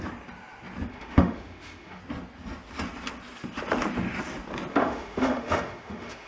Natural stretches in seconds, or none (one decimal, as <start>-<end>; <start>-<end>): 0.0-0.9; 2.0-4.7